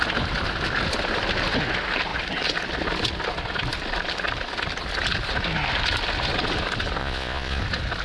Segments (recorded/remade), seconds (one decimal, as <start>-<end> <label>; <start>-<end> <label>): 0.0-7.0 recorded; 7.0-7.6 remade; 7.6-8.0 recorded